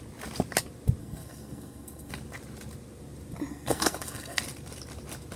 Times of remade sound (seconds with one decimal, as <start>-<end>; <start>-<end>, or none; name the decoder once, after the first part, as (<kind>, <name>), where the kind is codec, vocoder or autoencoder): 1.0-2.1 (codec, SNAC); 3.5-4.4